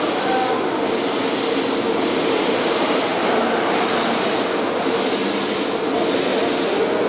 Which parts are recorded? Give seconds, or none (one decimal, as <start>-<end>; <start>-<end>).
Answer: 0.0-7.1